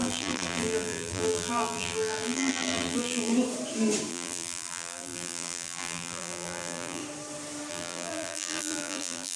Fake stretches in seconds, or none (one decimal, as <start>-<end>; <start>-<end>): 0.0-3.3; 4.1-7.0; 7.7-9.4